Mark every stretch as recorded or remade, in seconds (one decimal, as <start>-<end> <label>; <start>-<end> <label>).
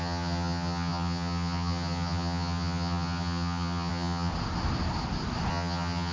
0.0-4.3 remade; 4.3-5.5 recorded; 5.5-6.1 remade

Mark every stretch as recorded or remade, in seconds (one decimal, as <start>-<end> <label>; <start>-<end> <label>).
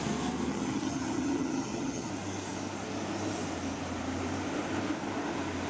0.0-0.5 recorded; 0.5-2.1 remade; 2.1-5.7 recorded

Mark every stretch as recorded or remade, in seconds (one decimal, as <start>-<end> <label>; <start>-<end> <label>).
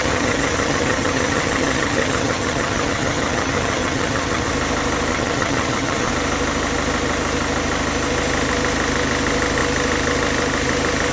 0.0-4.5 remade; 4.5-5.1 recorded; 5.1-6.1 remade; 6.1-11.1 recorded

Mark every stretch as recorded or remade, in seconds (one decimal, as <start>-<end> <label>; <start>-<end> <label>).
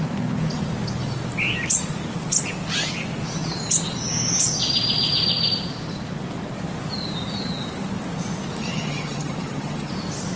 0.0-8.6 recorded; 8.6-9.9 remade; 9.9-10.4 recorded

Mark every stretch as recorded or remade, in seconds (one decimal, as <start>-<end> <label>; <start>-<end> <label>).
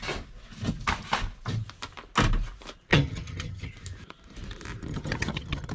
0.0-2.9 recorded; 2.9-3.7 remade; 3.7-4.9 recorded; 4.9-5.7 remade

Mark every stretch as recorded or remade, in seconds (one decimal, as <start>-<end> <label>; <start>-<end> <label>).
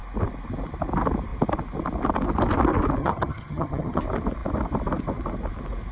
0.0-3.0 recorded; 3.0-4.0 remade; 4.0-5.9 recorded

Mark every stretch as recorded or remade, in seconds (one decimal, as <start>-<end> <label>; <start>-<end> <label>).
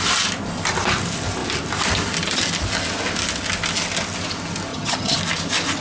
0.0-4.7 recorded; 4.7-5.2 remade; 5.2-5.8 recorded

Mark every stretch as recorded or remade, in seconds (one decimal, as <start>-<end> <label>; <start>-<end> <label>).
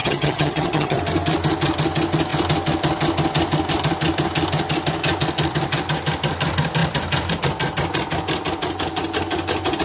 0.0-1.0 remade; 1.0-9.8 recorded